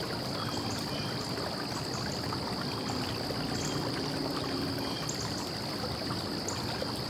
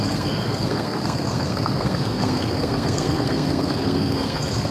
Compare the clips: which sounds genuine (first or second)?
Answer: first